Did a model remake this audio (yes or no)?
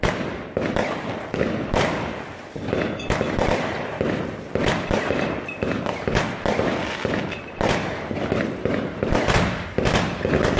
no